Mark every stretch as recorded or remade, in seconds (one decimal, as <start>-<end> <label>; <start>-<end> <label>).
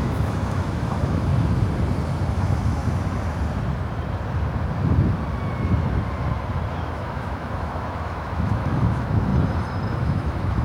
0.0-1.3 remade; 1.3-2.3 recorded; 2.3-2.8 remade; 2.8-6.7 recorded; 6.7-9.3 remade; 9.3-9.9 recorded; 9.9-10.6 remade